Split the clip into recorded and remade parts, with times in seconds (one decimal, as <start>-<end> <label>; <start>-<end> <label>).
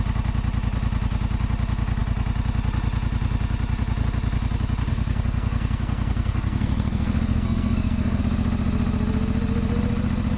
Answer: 0.0-4.9 recorded; 4.9-8.2 remade; 8.2-10.4 recorded